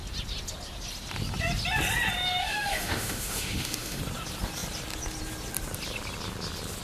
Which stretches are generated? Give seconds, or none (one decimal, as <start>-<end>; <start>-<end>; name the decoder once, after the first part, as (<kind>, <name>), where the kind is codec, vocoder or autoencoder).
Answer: 2.4-4.0 (autoencoder, DAC-VAE)